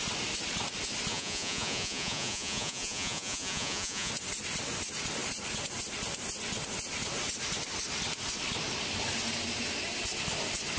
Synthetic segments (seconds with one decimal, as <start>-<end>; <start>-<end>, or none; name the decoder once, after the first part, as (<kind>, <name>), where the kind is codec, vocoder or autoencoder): 1.1-4.1 (vocoder, Vocos)